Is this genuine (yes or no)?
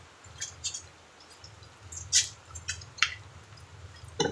yes